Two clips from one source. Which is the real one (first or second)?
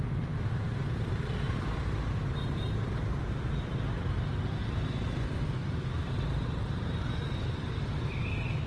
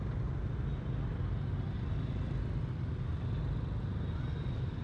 second